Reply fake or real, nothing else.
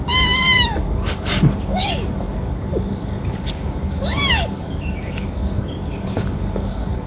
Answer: fake